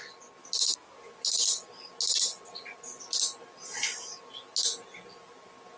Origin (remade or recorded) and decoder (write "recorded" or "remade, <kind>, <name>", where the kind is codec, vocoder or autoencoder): recorded